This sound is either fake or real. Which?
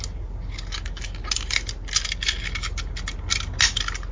real